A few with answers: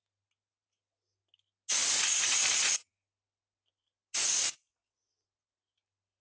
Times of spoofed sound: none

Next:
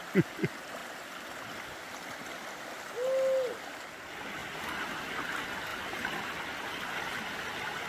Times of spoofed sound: 0.8-2.6 (vocoder, BigVGAN v2); 4.4-5.1; 5.7-6.2

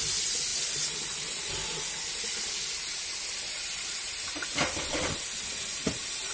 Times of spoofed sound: none